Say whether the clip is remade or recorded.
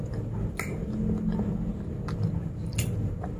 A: recorded